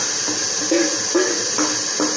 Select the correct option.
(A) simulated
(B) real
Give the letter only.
B